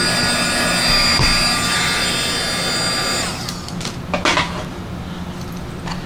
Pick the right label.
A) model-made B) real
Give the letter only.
B